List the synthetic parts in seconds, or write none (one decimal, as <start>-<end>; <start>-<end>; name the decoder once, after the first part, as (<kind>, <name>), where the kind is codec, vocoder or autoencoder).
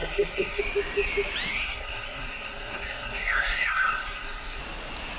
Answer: 0.0-0.6 (codec, SNAC); 1.5-4.6